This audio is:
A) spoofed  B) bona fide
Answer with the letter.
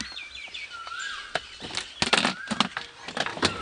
B